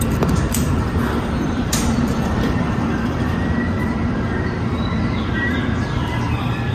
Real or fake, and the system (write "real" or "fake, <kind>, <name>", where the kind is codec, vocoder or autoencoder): fake, vocoder, BigVGAN v2